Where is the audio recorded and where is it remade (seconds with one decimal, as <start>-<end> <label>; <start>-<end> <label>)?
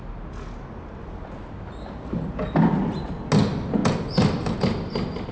0.0-5.3 recorded